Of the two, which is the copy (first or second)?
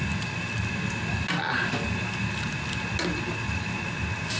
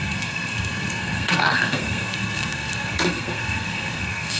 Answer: second